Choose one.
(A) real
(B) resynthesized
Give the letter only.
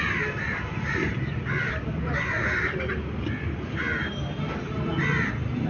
A